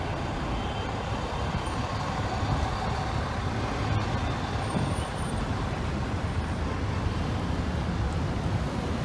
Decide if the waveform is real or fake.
real